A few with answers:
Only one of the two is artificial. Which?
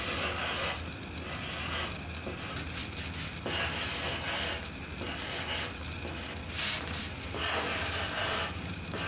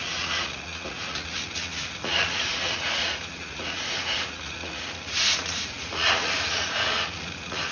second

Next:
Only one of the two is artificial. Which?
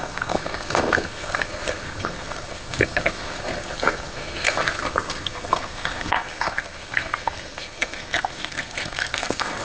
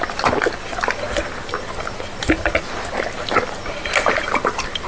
first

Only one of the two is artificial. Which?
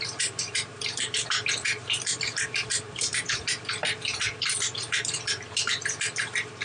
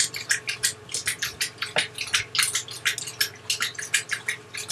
first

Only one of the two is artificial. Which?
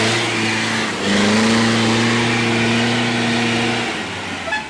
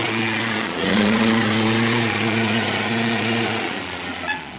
second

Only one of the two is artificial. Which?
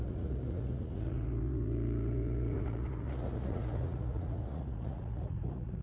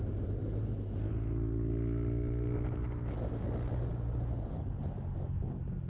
first